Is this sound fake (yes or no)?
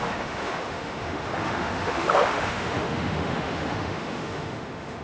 yes